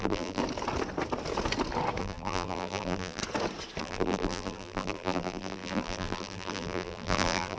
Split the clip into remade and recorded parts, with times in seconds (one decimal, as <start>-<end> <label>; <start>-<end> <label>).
0.0-0.4 remade; 0.4-2.0 recorded; 2.0-3.2 remade; 3.2-3.8 recorded; 3.8-7.6 remade